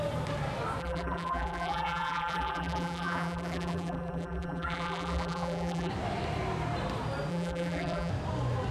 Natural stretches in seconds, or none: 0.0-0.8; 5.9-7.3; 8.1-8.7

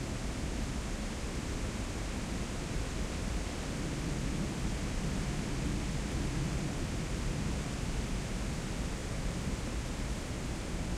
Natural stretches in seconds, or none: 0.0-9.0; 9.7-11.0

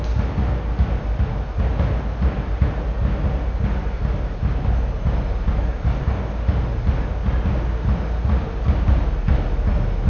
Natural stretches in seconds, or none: 0.0-10.1